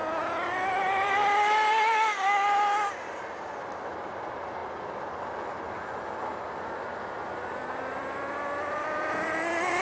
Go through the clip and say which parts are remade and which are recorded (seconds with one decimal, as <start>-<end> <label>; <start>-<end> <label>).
0.0-0.8 recorded; 0.8-4.6 remade; 4.6-7.8 recorded; 7.8-9.8 remade